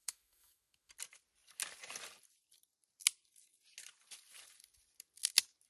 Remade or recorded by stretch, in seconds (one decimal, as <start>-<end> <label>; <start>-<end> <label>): 0.0-0.9 remade; 0.9-5.7 recorded